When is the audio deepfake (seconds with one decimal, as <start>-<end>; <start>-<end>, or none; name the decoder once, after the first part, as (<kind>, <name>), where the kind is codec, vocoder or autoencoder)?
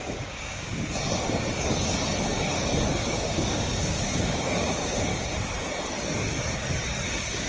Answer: 0.0-0.7 (codec, DAC); 3.1-5.1; 7.1-7.5